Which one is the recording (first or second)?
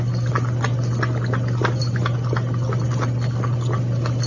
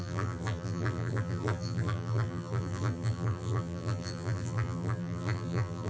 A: first